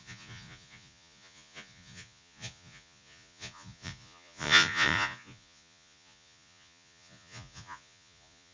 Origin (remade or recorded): remade